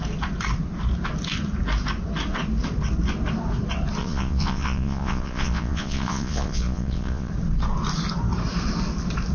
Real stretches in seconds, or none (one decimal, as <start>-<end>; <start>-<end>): 0.0-4.0; 7.3-9.3